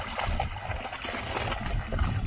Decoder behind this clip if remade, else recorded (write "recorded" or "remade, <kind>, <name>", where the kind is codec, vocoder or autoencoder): recorded